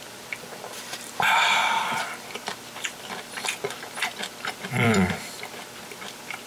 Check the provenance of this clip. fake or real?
fake